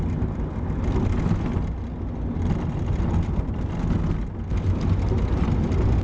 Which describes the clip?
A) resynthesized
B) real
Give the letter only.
B